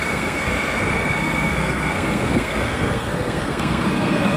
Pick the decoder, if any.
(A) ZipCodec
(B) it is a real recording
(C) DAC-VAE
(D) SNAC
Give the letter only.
D